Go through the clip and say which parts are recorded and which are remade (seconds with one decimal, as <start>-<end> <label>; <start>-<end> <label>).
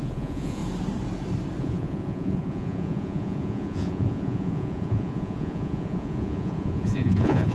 0.0-0.6 remade; 0.6-1.6 recorded; 1.6-7.5 remade